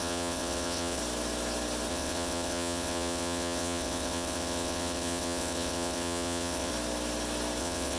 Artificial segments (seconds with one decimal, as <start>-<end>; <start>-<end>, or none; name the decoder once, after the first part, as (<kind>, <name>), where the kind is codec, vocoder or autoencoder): 0.0-1.0 (vocoder, WaveNeXt); 1.9-6.7; 7.6-8.0